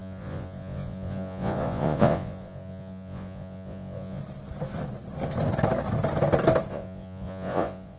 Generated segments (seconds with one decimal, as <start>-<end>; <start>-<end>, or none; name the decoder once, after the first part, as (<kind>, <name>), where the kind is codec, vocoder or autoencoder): 0.0-4.2 (vocoder, Vocos); 6.7-8.0

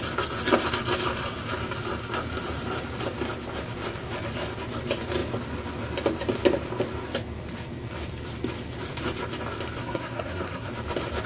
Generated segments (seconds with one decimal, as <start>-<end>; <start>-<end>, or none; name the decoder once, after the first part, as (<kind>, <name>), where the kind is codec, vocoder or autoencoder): 9.8-10.7 (codec, SNAC)

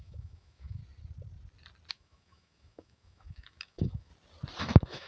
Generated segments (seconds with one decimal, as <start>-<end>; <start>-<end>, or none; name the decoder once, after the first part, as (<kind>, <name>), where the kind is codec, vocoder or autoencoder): 0.0-0.8 (autoencoder, DAC-VAE); 1.9-4.1; 4.6-5.1

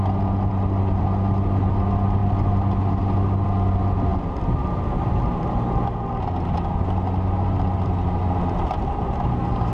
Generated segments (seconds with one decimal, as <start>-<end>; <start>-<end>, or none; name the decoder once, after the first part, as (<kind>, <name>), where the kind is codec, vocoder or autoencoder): none